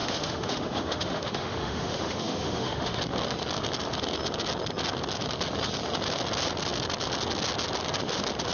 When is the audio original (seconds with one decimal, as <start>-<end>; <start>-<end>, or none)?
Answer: 3.0-8.5